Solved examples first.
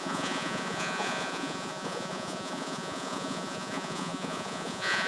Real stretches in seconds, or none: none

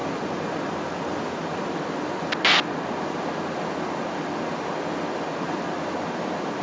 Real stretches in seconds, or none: 0.0-6.6

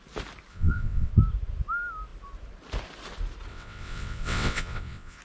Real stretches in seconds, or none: 0.0-0.5; 1.1-3.5

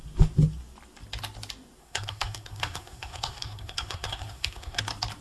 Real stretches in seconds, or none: 0.0-1.8; 4.8-5.2